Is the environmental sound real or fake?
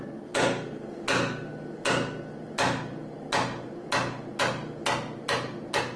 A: real